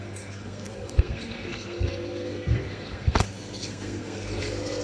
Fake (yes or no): yes